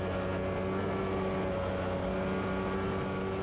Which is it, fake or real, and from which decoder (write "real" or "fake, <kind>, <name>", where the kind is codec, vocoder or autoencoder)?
real